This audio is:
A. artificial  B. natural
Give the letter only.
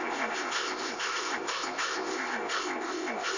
A